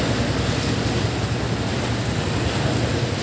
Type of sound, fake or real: real